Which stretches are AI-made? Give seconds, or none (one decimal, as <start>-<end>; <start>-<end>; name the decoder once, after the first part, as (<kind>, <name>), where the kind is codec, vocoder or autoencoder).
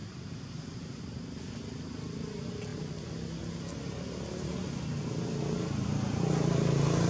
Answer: none